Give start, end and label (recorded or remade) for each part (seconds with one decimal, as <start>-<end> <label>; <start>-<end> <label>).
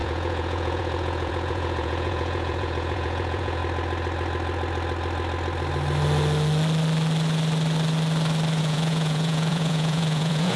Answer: 0.0-3.6 remade; 3.6-8.6 recorded; 8.6-10.6 remade